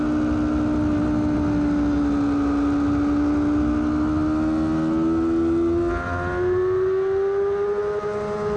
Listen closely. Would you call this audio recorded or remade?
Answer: recorded